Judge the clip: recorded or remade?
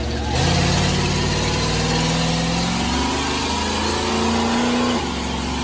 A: recorded